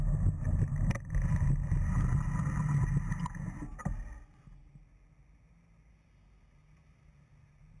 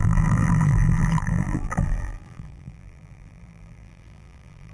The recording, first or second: first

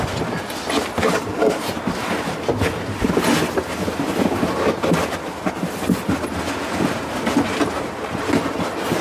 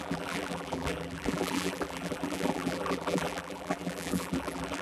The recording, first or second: first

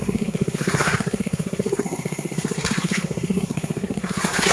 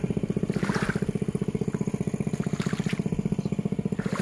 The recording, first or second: second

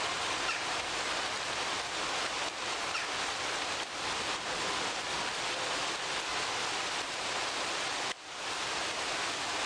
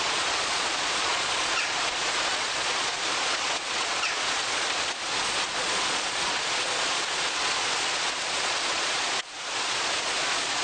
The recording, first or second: first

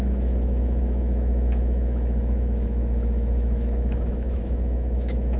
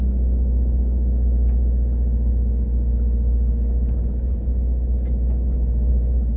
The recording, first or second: second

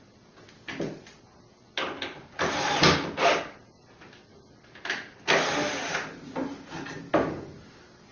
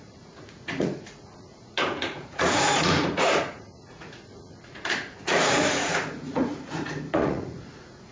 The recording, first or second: first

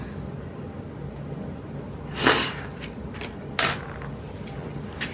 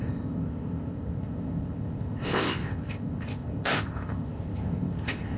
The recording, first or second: first